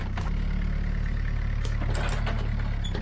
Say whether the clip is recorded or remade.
recorded